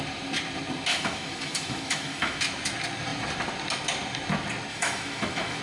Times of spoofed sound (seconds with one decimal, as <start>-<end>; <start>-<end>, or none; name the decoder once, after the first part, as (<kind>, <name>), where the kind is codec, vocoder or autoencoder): 0.9-2.4 (autoencoder, DAC-VAE); 4.7-5.6